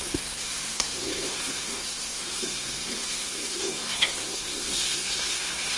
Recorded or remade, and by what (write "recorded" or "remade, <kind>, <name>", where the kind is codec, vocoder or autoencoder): remade, codec, SNAC